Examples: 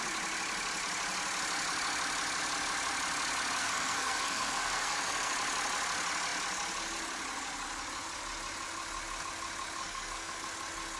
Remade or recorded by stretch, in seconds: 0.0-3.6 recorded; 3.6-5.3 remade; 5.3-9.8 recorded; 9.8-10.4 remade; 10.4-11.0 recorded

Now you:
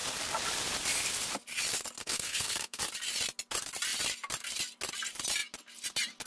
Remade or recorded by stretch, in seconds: 0.0-2.0 recorded; 2.0-2.8 remade; 2.8-6.3 recorded

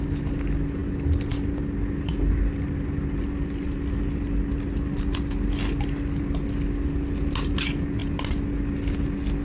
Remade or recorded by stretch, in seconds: 0.0-9.4 recorded

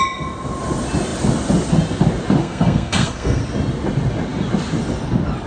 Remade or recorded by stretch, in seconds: 0.0-2.4 recorded; 2.4-3.4 remade; 3.4-5.5 recorded

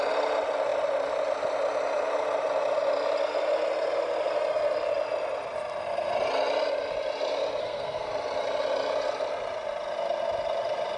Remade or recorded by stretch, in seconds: 0.0-7.6 recorded; 7.6-8.1 remade; 8.1-11.0 recorded